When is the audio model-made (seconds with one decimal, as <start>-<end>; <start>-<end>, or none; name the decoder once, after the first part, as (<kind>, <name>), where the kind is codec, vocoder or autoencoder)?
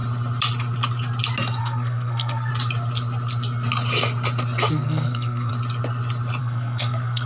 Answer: 1.6-2.5 (codec, SNAC); 4.7-5.5; 6.4-7.3